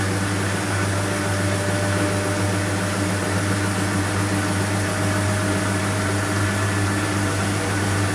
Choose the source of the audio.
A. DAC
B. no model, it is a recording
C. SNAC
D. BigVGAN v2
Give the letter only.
B